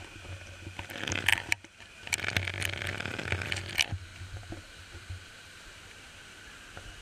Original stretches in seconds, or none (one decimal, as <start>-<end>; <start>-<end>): 0.0-1.3; 1.9-4.1; 6.1-7.0